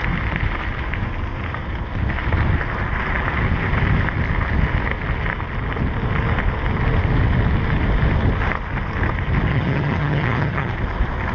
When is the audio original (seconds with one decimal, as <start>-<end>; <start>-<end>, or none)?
0.0-9.5; 10.7-11.3